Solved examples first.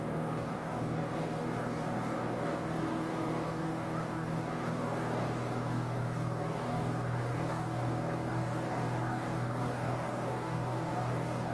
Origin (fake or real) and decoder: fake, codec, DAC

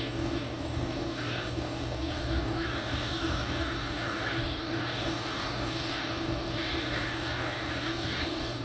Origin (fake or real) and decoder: fake, codec, DAC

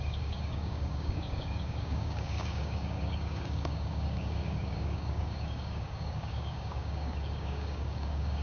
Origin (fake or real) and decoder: fake, codec, DAC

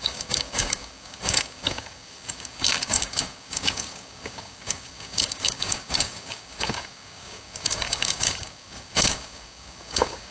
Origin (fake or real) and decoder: fake, codec, DAC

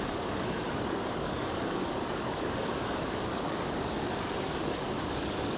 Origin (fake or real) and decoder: fake, codec, DAC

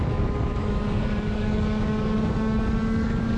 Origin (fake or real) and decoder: fake, codec, DAC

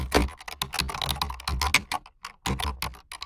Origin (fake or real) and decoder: real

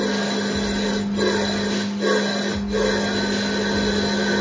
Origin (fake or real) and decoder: real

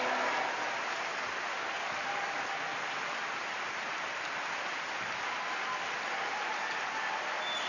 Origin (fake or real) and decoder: real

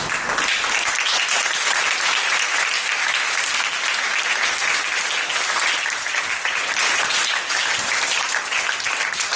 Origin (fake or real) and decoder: real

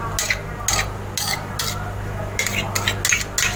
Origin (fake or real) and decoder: real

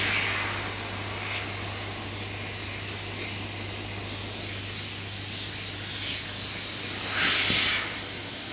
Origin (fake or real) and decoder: real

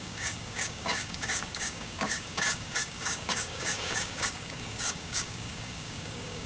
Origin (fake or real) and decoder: fake, codec, DAC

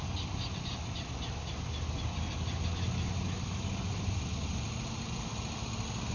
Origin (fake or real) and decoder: real